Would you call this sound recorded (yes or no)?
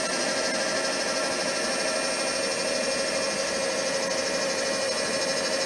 yes